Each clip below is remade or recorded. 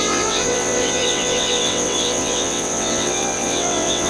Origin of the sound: remade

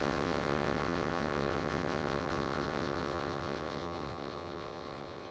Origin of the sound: remade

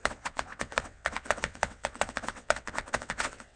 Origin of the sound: remade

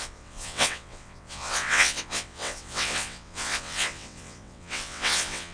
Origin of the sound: remade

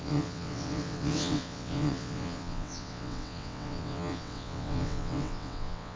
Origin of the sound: remade